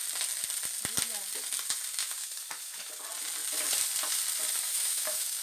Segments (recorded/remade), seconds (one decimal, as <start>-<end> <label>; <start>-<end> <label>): 0.0-2.0 recorded; 2.0-2.9 remade; 2.9-4.7 recorded; 4.7-5.4 remade